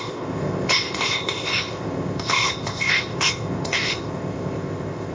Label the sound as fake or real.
fake